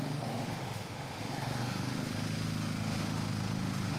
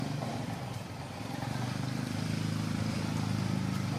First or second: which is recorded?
second